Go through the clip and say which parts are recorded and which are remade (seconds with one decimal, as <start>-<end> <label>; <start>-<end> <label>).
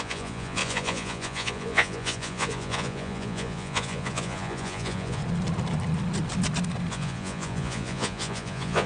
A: 0.0-5.2 remade; 5.2-6.9 recorded; 6.9-8.9 remade